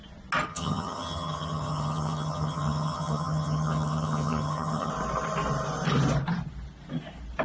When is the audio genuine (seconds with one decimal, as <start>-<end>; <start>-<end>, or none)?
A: 0.0-0.5; 4.9-7.4